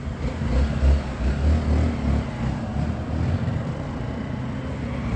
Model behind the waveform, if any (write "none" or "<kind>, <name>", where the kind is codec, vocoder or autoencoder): none